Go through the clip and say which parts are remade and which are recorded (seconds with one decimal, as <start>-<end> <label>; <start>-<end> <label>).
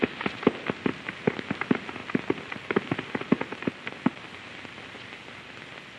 0.0-6.0 recorded